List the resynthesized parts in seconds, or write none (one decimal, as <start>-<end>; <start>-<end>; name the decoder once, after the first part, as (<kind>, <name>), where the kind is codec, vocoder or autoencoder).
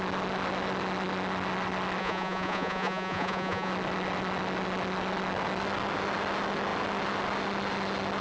2.0-3.7 (vocoder, Vocos)